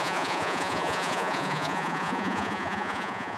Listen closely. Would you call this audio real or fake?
fake